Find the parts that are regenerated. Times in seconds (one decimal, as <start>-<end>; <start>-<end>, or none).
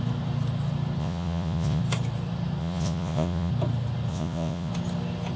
1.0-1.8; 2.6-3.5; 4.1-4.7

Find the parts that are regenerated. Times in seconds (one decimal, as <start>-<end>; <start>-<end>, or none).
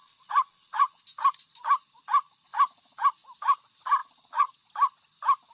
0.0-1.0; 4.0-4.5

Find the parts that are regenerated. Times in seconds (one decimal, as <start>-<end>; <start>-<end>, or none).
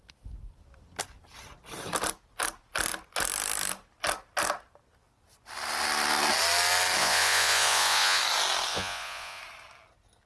7.0-8.2; 8.7-9.4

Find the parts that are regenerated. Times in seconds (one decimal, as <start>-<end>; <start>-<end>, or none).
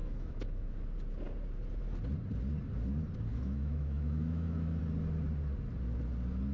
0.0-0.8; 3.3-4.8